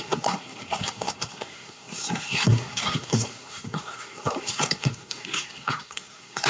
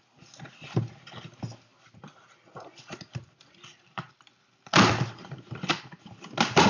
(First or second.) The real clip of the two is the second